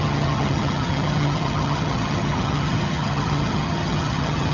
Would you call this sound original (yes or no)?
no